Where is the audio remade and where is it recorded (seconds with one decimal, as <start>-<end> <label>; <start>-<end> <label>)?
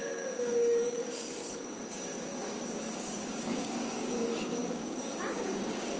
0.0-6.0 remade